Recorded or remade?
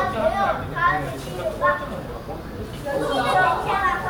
recorded